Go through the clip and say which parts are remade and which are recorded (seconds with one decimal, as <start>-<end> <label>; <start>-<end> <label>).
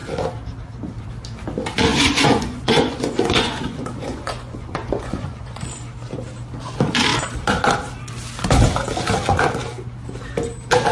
0.0-1.9 recorded; 1.9-5.7 remade; 5.7-10.9 recorded